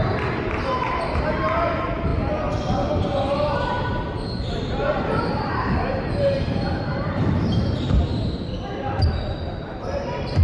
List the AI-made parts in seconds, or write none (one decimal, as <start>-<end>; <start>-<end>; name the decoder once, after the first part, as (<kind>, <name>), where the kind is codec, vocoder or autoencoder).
0.0-2.1 (vocoder, BigVGAN v2); 2.9-8.1; 9.7-10.4

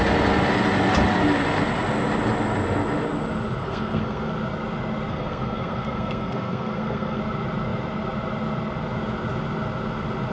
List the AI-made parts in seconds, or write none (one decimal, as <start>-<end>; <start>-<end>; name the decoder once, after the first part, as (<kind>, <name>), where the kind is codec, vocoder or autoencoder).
3.6-4.3 (codec, SNAC); 5.1-7.2